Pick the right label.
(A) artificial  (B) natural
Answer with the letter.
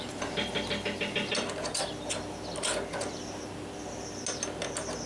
B